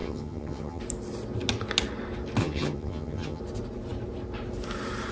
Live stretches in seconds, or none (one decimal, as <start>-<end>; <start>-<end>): 0.8-2.4; 3.4-5.1